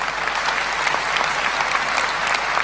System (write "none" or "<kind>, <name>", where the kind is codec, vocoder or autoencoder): none